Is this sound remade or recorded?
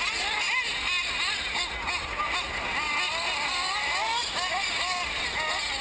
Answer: recorded